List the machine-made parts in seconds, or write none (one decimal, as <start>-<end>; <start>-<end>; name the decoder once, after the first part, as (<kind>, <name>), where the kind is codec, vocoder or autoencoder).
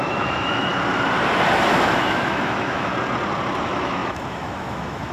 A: 0.0-0.7 (autoencoder, DAC-VAE); 1.9-2.9; 3.6-5.1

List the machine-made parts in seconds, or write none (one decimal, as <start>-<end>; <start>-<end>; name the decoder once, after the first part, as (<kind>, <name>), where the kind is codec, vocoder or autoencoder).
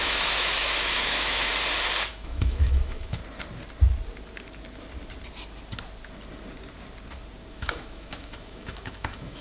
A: 0.0-1.5 (autoencoder, DAC-VAE); 2.1-3.2; 7.5-9.4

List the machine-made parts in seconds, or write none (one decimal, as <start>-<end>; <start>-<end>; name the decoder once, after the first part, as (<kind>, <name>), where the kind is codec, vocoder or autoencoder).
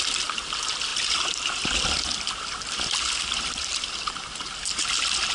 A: none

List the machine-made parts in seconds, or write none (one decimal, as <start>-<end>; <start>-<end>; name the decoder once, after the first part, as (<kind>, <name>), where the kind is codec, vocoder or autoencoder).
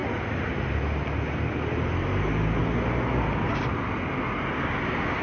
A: 0.0-0.5 (vocoder, BigVGAN v2)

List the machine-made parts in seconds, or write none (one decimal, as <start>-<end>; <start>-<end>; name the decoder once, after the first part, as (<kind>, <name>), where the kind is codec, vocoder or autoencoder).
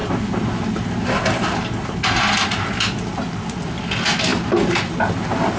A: none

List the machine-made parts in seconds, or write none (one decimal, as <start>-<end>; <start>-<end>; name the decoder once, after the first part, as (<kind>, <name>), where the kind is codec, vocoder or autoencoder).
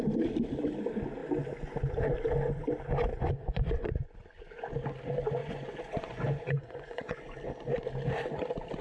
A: 3.1-4.7 (vocoder, Vocos); 5.4-7.2